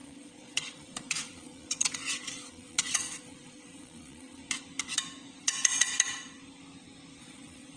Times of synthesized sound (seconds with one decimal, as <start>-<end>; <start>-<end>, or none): 0.0-4.4; 5.4-5.9; 7.2-7.8